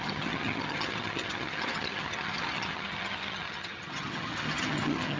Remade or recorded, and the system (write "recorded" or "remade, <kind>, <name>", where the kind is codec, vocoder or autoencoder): remade, vocoder, HiFi-GAN